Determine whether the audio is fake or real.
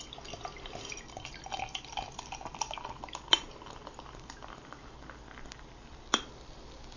real